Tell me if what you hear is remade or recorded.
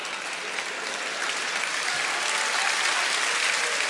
recorded